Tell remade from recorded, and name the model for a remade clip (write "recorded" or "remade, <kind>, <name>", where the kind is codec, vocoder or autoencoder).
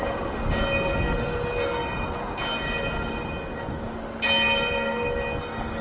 recorded